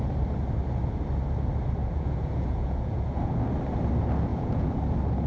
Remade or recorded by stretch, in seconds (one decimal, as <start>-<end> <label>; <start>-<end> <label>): 0.0-1.8 recorded; 1.8-3.3 remade; 3.3-4.3 recorded; 4.3-4.8 remade; 4.8-5.3 recorded